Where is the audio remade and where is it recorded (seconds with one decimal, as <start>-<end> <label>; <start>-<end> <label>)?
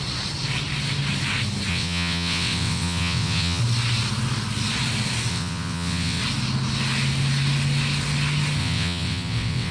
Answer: 0.0-1.7 recorded; 1.7-3.6 remade; 3.6-5.3 recorded; 5.3-6.2 remade; 6.2-8.6 recorded; 8.6-9.7 remade